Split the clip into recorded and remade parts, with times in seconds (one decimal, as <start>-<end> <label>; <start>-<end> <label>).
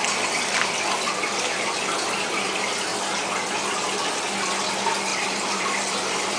0.0-5.1 recorded; 5.1-6.4 remade